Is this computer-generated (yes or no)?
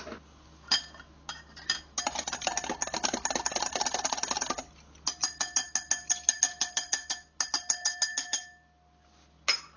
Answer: no